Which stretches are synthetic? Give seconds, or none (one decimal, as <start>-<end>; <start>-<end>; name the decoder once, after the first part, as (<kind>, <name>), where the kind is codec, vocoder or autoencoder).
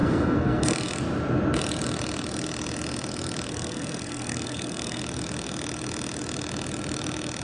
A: 0.0-1.0 (codec, SNAC); 3.5-5.0